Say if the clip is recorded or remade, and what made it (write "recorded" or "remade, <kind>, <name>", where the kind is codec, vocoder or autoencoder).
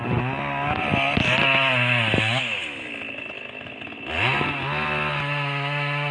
recorded